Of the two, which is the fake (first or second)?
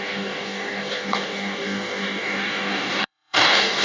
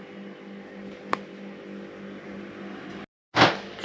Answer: first